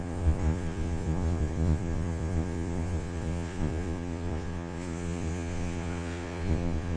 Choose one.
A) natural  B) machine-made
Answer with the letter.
B